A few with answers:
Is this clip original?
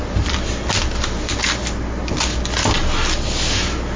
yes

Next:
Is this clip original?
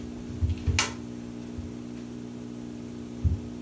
yes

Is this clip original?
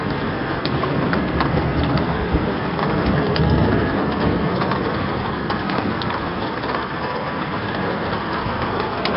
no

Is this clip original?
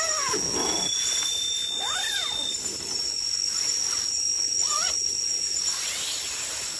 yes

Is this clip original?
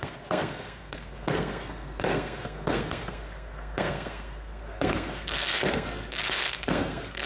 no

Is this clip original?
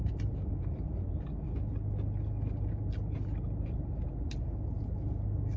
yes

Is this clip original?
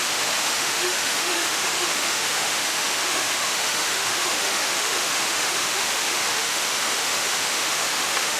no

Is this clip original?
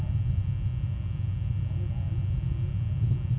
yes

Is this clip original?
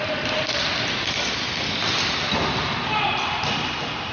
yes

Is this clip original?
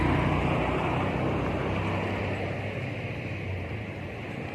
yes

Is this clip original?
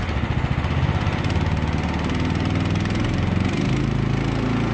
yes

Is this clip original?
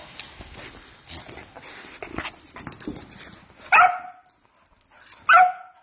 yes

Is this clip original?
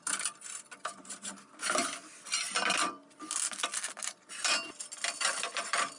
yes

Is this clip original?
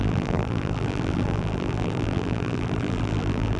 no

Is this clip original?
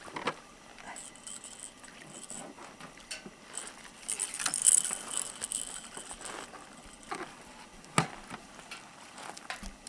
yes